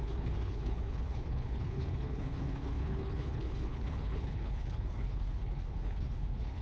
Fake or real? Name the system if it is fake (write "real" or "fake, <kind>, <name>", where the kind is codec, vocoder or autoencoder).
fake, codec, HILCodec